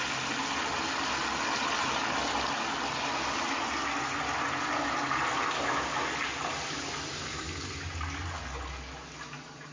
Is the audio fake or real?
real